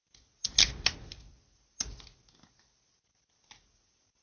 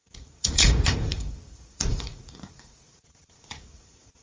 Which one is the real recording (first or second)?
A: first